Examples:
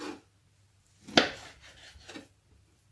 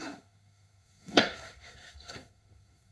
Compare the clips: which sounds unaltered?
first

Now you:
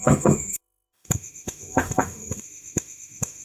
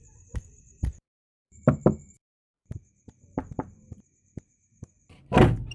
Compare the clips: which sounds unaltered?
second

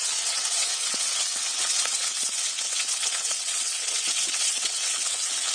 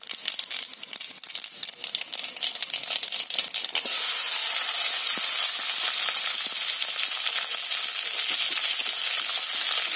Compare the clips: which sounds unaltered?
second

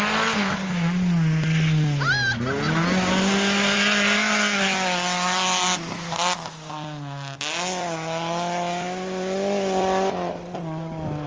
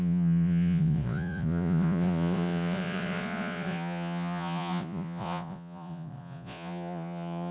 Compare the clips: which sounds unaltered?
first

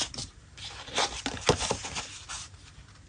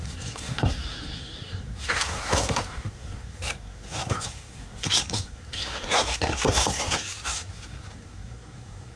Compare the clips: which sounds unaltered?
first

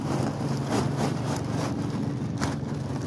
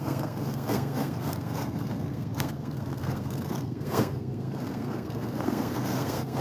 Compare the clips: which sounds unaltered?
first